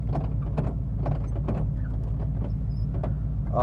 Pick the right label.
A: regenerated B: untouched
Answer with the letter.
B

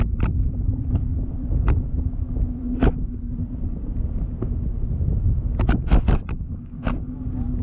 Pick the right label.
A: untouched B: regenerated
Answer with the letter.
A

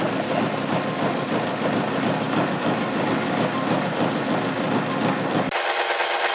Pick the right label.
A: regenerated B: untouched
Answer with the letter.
B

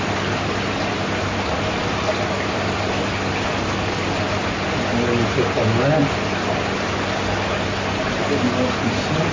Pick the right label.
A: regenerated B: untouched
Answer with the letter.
B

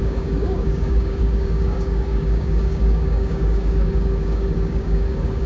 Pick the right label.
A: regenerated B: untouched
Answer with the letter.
A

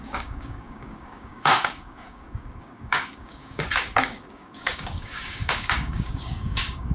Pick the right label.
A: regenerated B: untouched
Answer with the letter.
A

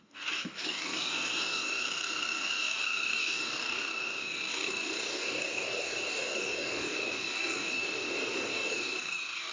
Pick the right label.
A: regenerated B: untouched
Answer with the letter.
A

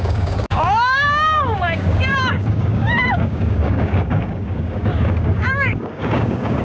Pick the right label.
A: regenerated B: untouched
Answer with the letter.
A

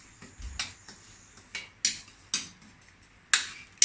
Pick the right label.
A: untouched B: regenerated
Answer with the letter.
A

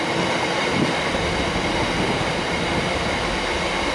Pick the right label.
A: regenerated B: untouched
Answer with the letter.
B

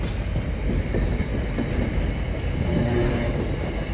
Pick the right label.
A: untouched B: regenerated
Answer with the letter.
A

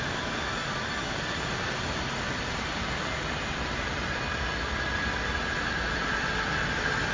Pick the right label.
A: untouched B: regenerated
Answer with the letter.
A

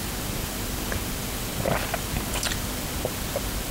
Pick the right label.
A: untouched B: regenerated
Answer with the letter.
A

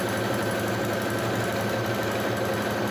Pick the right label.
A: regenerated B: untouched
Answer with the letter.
B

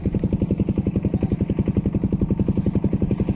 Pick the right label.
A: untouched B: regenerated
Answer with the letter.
A